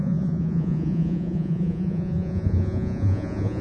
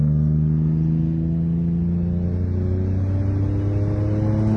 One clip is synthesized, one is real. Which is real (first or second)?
second